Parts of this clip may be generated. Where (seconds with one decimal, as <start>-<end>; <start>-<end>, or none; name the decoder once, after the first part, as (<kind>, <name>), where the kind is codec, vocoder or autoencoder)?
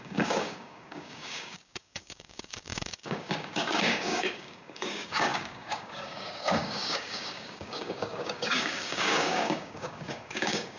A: 0.0-10.8 (codec, DAC)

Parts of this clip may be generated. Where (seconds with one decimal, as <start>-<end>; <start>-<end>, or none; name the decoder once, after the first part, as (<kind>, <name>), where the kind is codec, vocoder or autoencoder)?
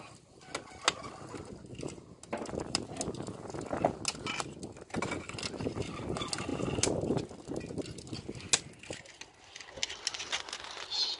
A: none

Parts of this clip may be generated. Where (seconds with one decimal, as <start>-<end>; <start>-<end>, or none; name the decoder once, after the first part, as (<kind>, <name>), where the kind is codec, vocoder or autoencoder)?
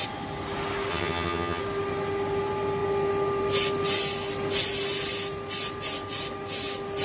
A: 0.9-1.6 (vocoder, HiFi-GAN)